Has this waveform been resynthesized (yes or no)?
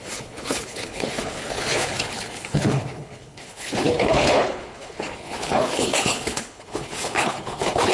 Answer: yes